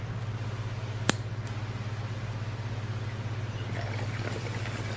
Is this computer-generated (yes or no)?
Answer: no